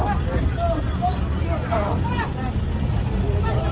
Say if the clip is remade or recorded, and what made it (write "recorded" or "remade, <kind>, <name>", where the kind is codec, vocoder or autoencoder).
recorded